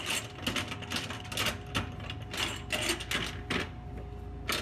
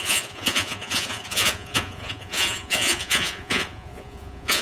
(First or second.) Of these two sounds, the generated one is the second